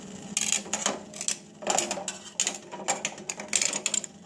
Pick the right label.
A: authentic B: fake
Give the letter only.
A